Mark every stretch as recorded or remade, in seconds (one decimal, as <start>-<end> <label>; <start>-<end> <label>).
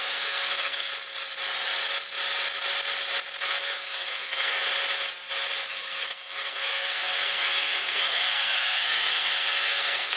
0.0-0.9 remade; 0.9-3.4 recorded; 3.4-4.6 remade; 4.6-5.7 recorded; 5.7-10.2 remade